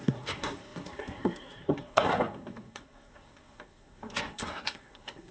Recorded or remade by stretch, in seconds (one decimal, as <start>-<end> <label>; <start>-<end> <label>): 0.0-5.3 remade